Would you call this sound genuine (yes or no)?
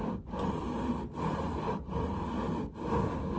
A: yes